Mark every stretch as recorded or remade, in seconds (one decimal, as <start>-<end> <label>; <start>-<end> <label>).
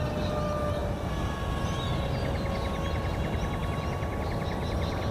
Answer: 0.0-0.8 recorded; 0.8-1.4 remade; 1.4-3.6 recorded; 3.6-5.1 remade